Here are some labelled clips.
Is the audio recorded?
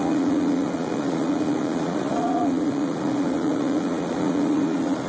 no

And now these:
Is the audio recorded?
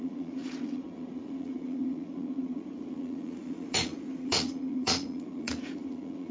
no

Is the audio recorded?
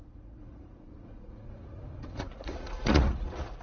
no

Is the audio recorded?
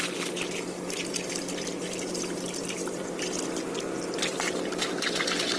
yes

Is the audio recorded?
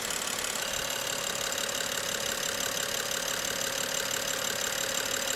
yes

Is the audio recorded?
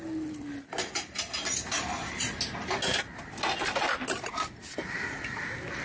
yes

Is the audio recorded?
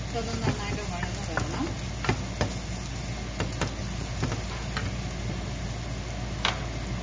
yes